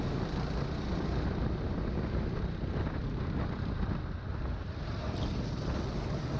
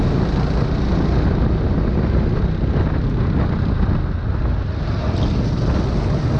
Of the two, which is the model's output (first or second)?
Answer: first